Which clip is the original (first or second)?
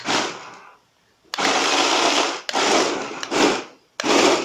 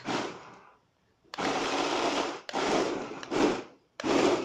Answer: first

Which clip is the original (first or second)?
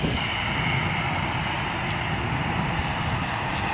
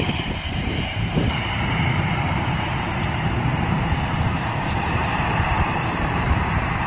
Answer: first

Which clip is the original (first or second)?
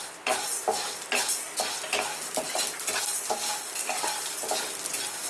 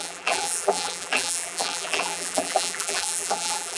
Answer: first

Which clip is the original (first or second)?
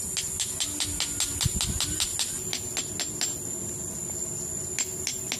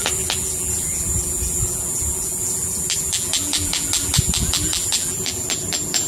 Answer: first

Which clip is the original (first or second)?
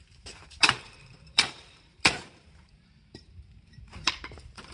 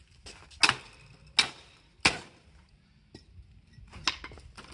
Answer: second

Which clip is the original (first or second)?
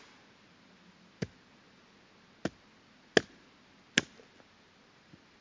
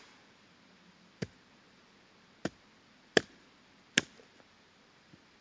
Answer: first